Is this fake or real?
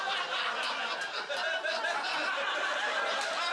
real